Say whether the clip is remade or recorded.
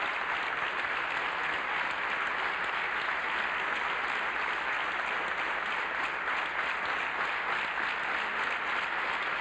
recorded